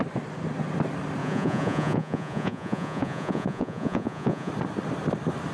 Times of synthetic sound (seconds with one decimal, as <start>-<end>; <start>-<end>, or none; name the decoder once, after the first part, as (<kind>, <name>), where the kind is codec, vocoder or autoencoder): 1.2-4.5 (vocoder, Vocos)